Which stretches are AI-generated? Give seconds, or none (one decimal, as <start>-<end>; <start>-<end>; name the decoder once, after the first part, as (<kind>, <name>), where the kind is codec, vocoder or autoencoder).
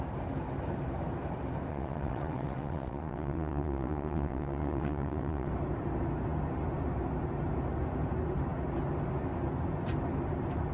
1.7-5.5 (vocoder, WaveNeXt)